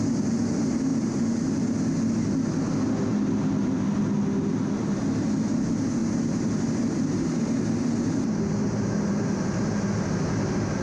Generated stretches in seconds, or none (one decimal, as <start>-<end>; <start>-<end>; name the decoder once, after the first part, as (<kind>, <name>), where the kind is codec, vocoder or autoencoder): none